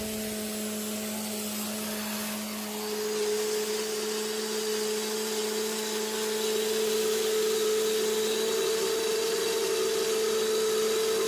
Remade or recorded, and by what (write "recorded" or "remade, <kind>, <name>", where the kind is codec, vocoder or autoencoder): recorded